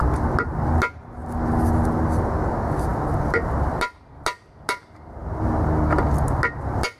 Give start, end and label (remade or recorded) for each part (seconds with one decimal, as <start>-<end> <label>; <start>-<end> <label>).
0.0-7.0 recorded